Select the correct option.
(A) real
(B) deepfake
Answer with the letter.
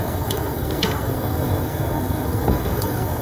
B